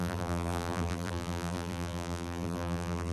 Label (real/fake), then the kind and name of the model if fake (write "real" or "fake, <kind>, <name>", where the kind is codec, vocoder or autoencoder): fake, vocoder, BigVGAN v2